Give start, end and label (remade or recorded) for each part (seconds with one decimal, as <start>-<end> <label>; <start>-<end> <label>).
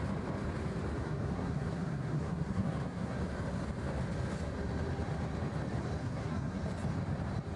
0.0-0.9 recorded; 0.9-3.2 remade; 3.2-6.0 recorded; 6.0-6.6 remade; 6.6-7.6 recorded